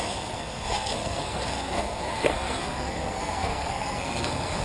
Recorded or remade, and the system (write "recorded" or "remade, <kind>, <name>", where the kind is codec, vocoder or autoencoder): remade, codec, SNAC